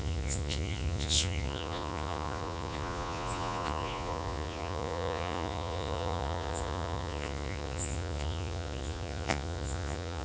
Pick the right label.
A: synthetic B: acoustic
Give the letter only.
A